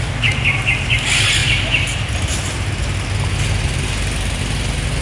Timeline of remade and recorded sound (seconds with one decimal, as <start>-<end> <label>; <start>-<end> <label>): 0.0-5.0 recorded

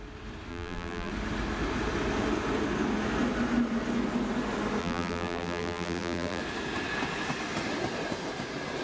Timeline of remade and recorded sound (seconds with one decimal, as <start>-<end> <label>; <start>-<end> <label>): 0.0-0.5 recorded; 0.5-1.1 remade; 1.1-4.8 recorded; 4.8-6.4 remade; 6.4-8.8 recorded

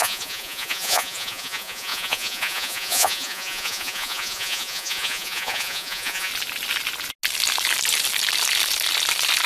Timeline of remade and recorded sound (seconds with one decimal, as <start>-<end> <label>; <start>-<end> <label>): 0.0-6.3 remade; 6.3-9.5 recorded

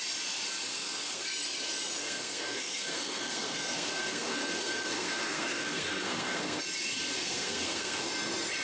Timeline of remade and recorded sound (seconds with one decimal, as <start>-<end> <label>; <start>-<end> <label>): 0.0-0.7 recorded; 0.7-1.2 remade; 1.2-2.0 recorded; 2.0-6.6 remade; 6.6-7.2 recorded; 7.2-8.1 remade; 8.1-8.6 recorded

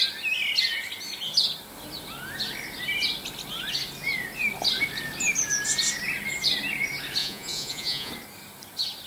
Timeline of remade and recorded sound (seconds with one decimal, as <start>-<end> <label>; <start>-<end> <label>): 0.0-7.2 recorded; 7.2-8.1 remade; 8.1-9.1 recorded

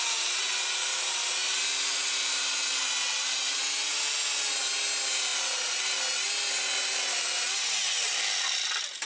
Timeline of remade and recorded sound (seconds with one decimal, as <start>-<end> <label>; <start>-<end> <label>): 0.0-9.1 recorded